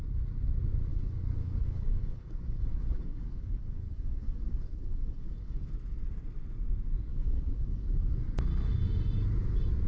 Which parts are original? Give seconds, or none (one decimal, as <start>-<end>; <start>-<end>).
0.0-0.9; 5.7-7.1; 8.2-9.9